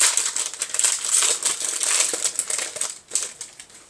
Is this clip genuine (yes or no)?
yes